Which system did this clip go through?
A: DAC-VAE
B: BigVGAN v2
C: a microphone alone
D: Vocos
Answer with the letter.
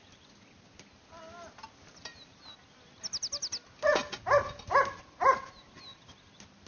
C